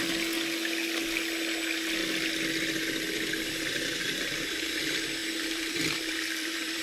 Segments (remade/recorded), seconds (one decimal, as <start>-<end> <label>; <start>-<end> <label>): 0.0-5.2 recorded; 5.2-6.8 remade